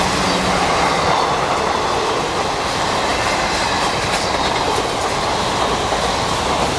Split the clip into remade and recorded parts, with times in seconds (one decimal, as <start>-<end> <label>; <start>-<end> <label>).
0.0-6.8 recorded